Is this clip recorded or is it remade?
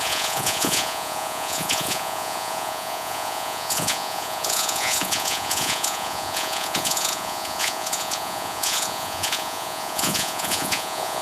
remade